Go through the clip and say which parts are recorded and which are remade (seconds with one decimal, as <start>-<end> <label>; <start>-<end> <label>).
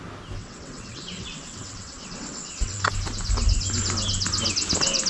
0.0-0.4 recorded; 0.4-2.9 remade; 2.9-5.1 recorded